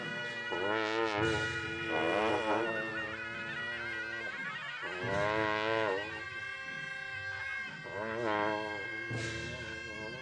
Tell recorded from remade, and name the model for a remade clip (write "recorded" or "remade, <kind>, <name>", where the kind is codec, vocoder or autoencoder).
recorded